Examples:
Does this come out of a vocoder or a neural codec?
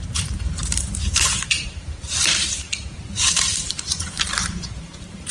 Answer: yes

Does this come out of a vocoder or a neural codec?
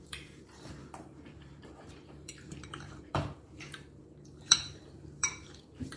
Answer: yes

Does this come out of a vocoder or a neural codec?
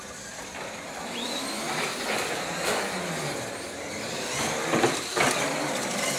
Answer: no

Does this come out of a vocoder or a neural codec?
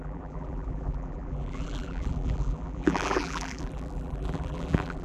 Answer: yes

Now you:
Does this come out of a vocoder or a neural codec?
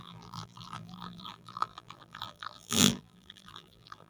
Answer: yes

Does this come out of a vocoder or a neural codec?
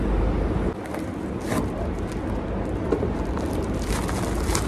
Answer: no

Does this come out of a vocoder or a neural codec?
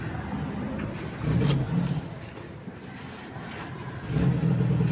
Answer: no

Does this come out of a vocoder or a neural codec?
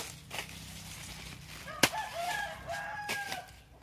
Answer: no